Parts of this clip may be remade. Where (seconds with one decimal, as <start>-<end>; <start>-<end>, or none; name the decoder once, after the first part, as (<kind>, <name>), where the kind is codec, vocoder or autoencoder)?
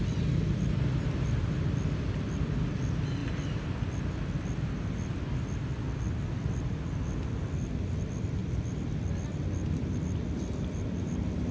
none